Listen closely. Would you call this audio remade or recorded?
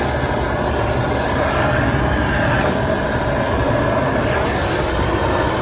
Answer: recorded